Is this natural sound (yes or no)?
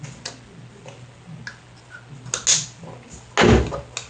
yes